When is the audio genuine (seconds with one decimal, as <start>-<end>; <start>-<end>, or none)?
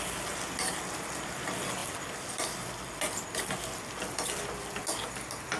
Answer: 0.0-1.8; 4.8-5.6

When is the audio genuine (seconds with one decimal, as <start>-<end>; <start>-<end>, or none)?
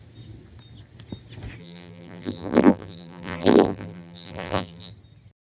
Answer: 0.0-1.6; 4.9-5.5